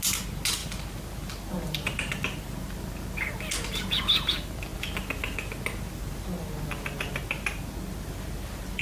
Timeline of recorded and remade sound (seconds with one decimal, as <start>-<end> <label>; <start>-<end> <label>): 0.0-8.8 recorded